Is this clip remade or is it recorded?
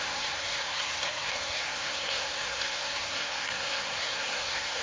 remade